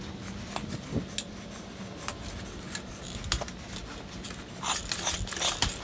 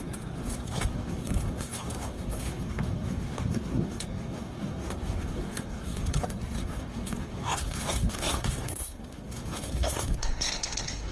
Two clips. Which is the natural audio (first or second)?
first